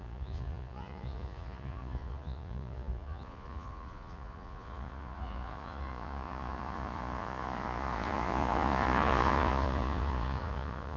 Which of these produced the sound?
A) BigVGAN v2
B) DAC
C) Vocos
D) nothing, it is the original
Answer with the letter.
C